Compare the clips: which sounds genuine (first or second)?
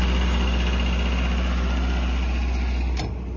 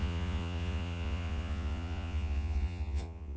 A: first